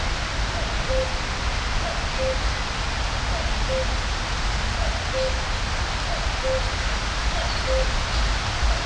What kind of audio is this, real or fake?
real